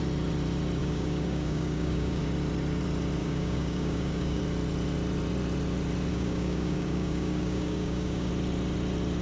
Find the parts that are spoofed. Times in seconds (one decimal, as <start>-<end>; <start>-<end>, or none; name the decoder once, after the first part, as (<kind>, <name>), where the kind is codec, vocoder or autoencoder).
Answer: 0.8-2.2 (codec, DAC); 3.2-4.4; 6.1-8.3